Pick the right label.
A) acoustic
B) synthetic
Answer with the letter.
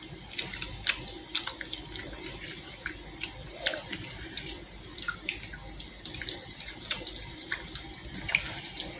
A